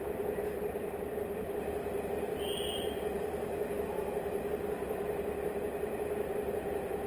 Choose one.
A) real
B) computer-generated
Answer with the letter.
B